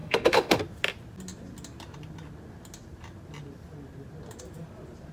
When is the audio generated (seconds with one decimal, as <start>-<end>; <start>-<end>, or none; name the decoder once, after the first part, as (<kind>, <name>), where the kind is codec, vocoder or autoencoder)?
0.0-0.6 (autoencoder, DAC-VAE)